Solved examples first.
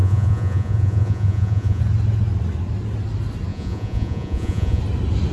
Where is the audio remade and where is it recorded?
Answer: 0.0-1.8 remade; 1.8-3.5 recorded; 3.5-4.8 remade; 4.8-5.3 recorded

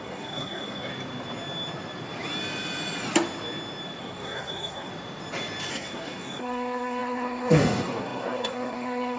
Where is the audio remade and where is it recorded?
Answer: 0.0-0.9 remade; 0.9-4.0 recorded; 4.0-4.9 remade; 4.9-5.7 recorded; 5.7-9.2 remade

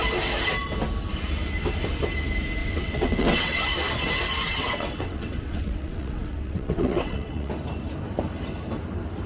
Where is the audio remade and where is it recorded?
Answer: 0.0-2.6 recorded; 2.6-3.6 remade; 3.6-4.4 recorded; 4.4-7.5 remade; 7.5-9.3 recorded